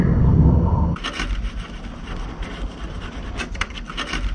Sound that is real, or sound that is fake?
real